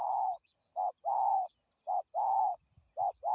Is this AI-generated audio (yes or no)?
no